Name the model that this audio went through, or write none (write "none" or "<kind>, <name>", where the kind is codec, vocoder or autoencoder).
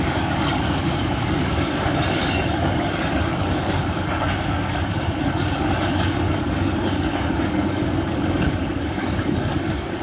codec, DAC